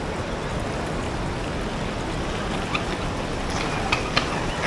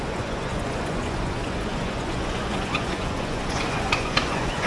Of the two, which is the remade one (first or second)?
second